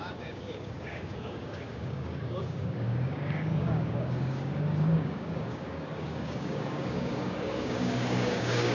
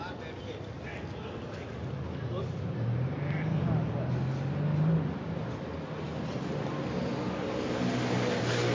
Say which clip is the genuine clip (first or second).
second